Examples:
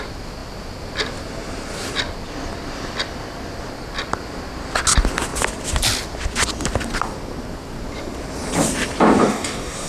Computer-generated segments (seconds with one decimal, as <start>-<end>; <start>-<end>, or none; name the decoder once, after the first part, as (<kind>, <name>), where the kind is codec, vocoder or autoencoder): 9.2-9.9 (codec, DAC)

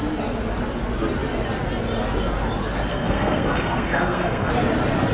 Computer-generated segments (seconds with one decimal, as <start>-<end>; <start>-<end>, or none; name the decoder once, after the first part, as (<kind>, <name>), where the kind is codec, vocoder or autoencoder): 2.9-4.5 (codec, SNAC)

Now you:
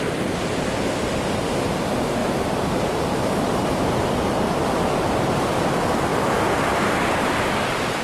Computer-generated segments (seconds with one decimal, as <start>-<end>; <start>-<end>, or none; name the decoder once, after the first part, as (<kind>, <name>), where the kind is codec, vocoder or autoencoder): 2.2-5.6 (vocoder, BigVGAN v2)

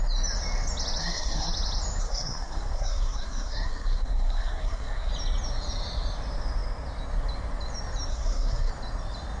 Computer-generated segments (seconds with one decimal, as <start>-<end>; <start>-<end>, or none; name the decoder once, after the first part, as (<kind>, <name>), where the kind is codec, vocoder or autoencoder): 1.0-1.5 (codec, SNAC); 2.0-5.1; 8.1-8.7

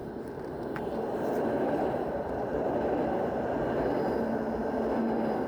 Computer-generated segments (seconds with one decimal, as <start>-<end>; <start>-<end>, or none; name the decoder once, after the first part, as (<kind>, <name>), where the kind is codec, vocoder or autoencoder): 0.0-3.3 (vocoder, BigVGAN v2)